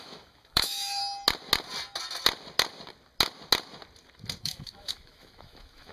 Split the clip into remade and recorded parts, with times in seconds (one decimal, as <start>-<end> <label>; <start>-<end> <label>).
0.0-1.0 remade; 1.0-4.4 recorded; 4.4-5.9 remade